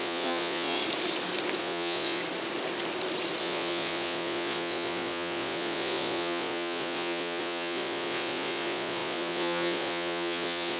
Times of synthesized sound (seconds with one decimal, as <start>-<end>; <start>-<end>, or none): 0.0-0.8; 1.6-2.2; 3.4-10.8